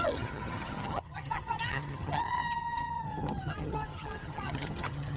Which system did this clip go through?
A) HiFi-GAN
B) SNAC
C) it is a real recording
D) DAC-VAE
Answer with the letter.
A